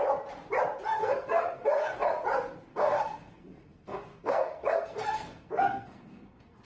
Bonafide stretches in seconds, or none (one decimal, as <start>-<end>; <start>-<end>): 0.0-1.0; 2.1-2.7